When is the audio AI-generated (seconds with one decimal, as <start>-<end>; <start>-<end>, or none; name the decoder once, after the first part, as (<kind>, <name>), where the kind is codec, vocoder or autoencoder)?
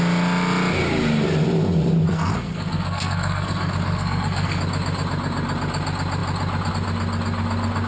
2.1-4.6 (codec, SNAC)